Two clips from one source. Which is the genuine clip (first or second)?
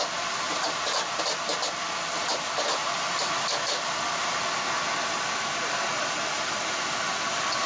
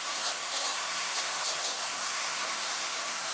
first